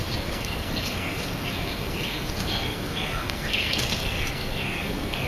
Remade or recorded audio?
remade